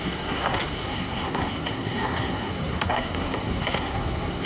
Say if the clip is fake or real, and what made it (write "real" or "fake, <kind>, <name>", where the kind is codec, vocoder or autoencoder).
fake, codec, SNAC